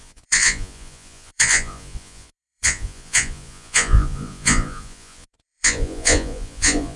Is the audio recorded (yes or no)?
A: no